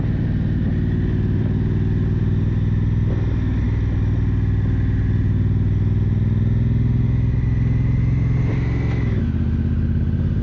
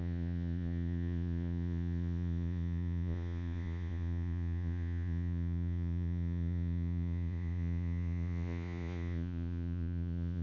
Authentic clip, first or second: first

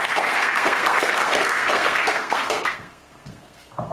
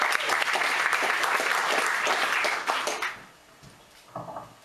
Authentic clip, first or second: second